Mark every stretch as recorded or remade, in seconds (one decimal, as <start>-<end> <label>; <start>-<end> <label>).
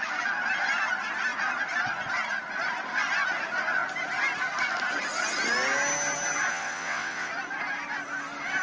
0.0-6.5 recorded; 6.5-7.3 remade; 7.3-8.6 recorded